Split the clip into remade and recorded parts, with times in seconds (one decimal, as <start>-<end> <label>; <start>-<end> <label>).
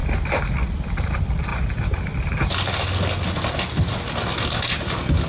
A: 0.0-5.3 recorded